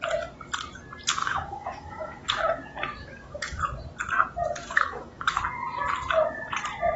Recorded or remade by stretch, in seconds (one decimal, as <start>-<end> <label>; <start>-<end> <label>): 0.0-1.2 recorded; 1.2-2.3 remade; 2.3-3.0 recorded; 3.0-3.6 remade; 3.6-4.6 recorded; 4.6-5.4 remade; 5.4-7.0 recorded